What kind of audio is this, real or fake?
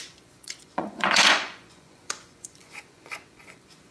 fake